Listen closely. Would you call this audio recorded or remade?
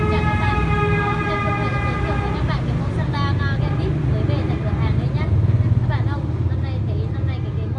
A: recorded